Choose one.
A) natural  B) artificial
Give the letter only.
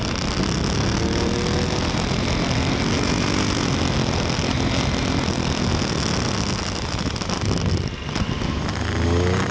A